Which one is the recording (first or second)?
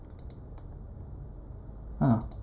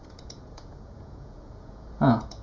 first